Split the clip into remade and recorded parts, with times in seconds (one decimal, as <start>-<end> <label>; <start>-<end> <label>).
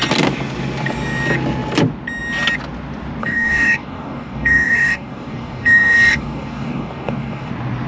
0.0-3.2 recorded; 3.2-7.5 remade; 7.5-7.9 recorded